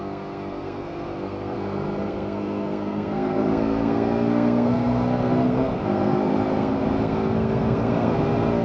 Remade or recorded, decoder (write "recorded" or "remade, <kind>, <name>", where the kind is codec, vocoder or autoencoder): remade, codec, SNAC